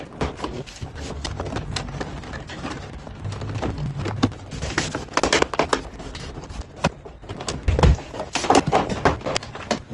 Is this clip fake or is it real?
real